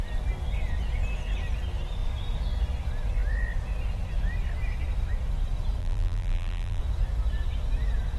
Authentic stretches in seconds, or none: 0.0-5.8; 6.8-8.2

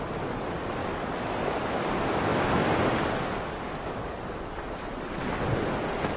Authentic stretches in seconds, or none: 0.8-1.8

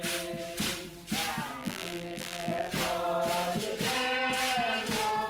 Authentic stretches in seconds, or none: 0.0-1.6; 2.7-5.3

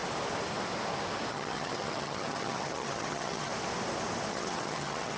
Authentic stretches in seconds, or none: 0.0-1.3; 3.5-4.3

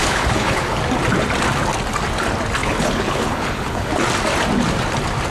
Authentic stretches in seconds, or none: 0.8-2.6; 3.9-5.3

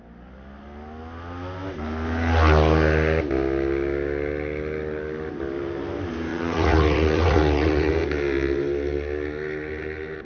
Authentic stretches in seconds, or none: 0.0-6.3; 7.9-10.2